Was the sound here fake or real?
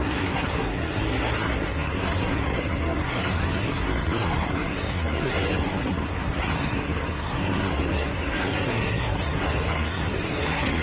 fake